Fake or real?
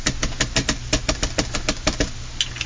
real